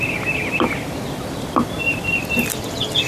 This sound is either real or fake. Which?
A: real